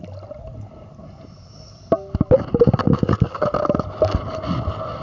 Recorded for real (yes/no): yes